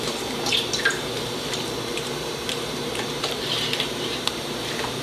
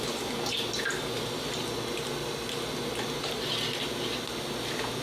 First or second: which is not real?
first